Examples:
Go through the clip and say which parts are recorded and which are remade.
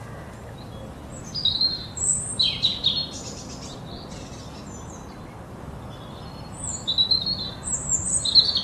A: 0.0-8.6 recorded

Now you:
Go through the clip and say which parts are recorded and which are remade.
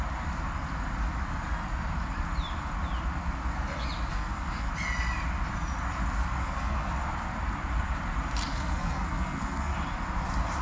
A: 0.0-4.1 recorded; 4.1-4.7 remade; 4.7-6.4 recorded; 6.4-6.9 remade; 6.9-8.5 recorded; 8.5-9.7 remade; 9.7-10.6 recorded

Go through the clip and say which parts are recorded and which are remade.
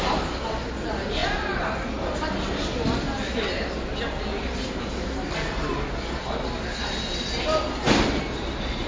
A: 0.0-8.9 recorded